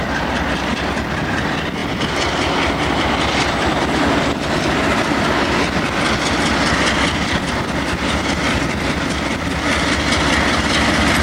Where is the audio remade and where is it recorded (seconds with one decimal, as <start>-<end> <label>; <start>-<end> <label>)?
0.0-11.2 recorded